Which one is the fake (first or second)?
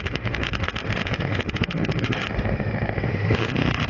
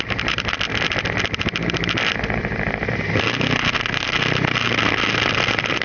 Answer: first